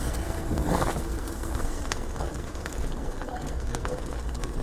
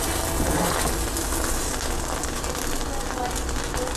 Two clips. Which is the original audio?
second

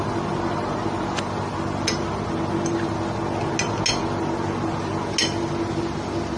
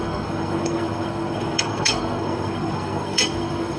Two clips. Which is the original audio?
first